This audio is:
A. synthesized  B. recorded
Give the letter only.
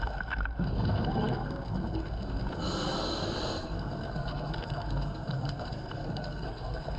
A